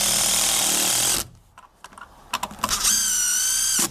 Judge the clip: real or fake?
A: real